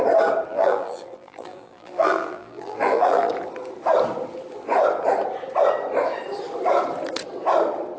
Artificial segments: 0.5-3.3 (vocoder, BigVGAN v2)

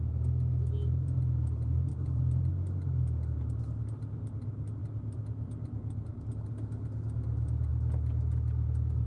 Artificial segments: 1.9-2.5 (vocoder, BigVGAN v2); 4.8-6.2

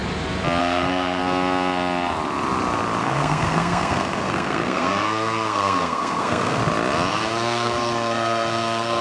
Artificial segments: 0.6-1.2 (codec, SNAC); 3.0-6.6; 7.1-9.0

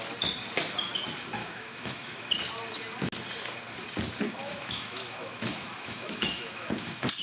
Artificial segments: 1.4-2.3 (autoencoder, DAC-VAE); 4.4-6.7

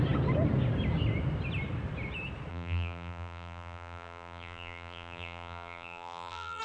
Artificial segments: 2.5-6.6 (vocoder, BigVGAN v2)

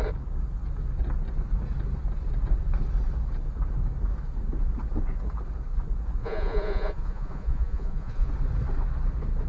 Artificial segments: 6.2-8.3 (vocoder, Vocos)

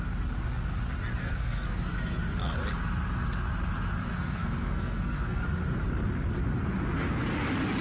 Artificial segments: 1.2-1.8 (codec, SNAC); 4.1-5.4